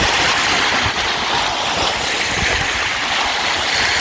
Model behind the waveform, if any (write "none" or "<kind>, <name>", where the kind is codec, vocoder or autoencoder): none